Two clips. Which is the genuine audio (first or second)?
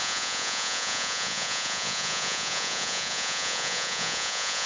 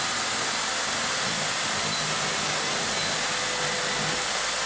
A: second